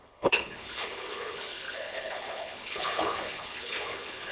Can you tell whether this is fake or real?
fake